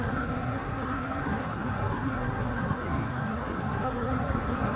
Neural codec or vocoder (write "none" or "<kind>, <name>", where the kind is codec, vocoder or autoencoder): codec, SNAC